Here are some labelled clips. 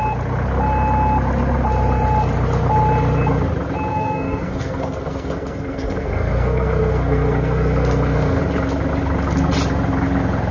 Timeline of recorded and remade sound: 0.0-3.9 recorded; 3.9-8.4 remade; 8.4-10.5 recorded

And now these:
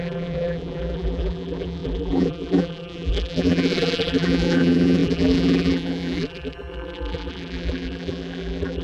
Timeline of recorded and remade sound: 0.0-8.8 remade